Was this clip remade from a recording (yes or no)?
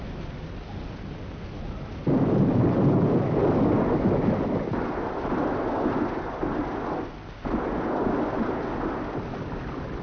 no